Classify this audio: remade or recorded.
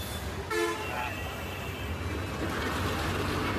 recorded